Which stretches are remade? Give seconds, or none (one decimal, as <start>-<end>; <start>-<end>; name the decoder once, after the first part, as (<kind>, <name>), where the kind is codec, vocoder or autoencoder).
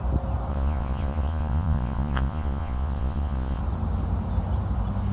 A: 0.5-3.6 (vocoder, Vocos)